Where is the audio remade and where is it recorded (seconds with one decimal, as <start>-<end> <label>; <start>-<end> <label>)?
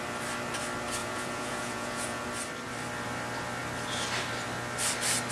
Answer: 0.0-1.0 recorded; 1.0-2.3 remade; 2.3-5.3 recorded